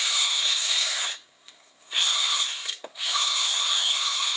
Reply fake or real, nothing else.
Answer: fake